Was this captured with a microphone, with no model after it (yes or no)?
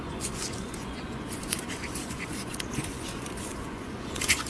no